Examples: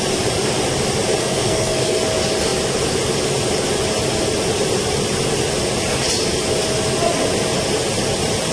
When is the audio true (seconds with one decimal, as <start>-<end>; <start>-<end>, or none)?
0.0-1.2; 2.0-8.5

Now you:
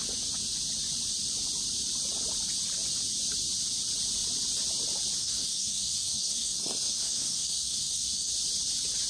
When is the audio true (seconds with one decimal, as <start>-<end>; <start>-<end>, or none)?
0.0-5.2; 8.3-9.1

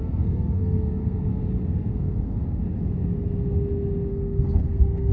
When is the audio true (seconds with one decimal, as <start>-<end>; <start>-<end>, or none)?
1.3-1.9; 2.6-4.1